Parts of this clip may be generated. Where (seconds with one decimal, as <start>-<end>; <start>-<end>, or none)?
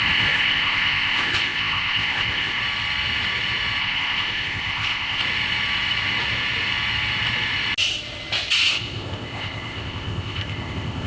0.0-2.6; 3.8-5.2; 8.7-11.1